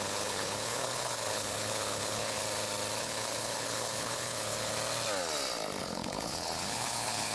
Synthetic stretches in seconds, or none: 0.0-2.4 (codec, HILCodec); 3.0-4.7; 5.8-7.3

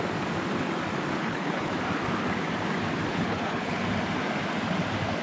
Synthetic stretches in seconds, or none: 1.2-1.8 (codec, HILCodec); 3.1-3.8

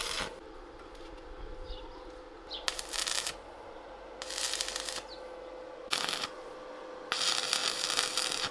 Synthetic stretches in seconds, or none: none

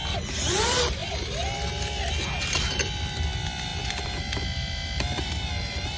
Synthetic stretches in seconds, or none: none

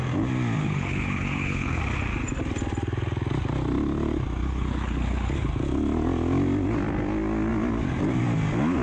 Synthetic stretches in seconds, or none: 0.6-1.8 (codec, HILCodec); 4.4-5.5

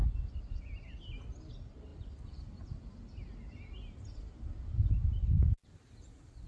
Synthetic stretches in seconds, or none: none